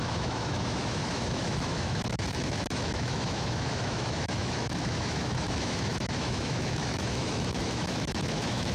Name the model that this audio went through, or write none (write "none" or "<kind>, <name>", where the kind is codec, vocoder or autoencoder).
autoencoder, DAC-VAE